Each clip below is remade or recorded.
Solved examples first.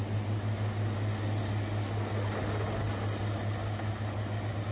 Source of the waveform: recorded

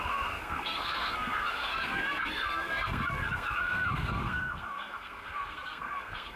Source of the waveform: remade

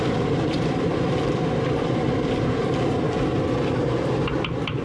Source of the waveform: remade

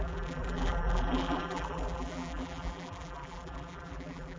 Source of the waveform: remade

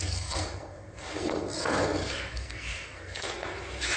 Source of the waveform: remade